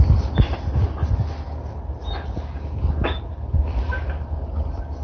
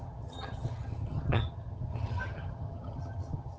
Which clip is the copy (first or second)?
second